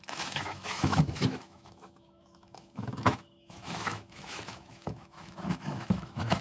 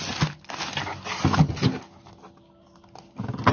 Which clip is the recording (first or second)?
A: second